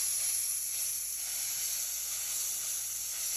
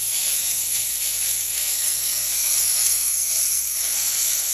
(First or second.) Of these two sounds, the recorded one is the first